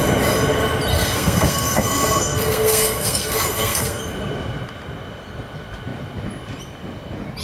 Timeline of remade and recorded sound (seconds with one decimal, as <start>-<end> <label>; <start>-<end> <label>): 0.0-0.9 recorded; 0.9-4.0 remade; 4.0-7.4 recorded